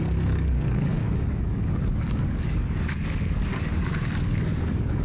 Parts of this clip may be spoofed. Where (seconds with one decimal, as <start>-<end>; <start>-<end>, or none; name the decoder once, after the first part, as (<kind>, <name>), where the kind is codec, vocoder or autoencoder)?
0.0-5.0 (codec, DAC)